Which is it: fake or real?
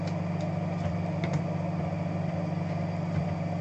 real